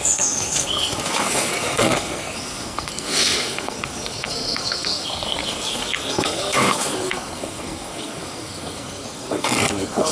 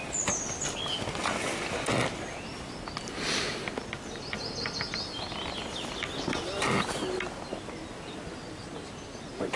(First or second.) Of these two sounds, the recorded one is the second